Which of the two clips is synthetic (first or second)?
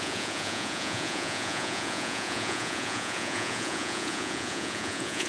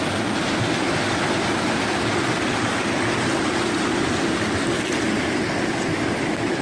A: first